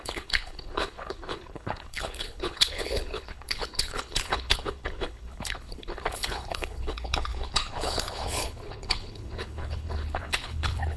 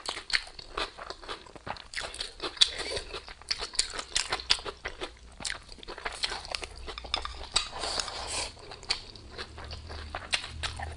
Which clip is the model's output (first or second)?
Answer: first